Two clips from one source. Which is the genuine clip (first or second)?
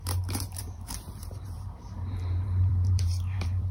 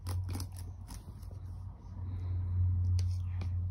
second